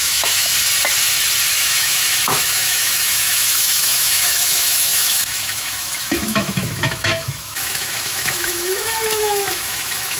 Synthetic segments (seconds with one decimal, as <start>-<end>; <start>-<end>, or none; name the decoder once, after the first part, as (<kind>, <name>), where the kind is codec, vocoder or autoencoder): 0.0-0.5 (autoencoder, DAC-VAE); 1.5-10.2